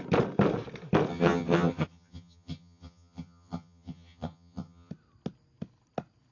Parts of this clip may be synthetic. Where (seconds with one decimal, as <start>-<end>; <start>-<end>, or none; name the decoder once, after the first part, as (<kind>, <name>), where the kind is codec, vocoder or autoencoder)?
1.1-4.9 (vocoder, HiFi-GAN)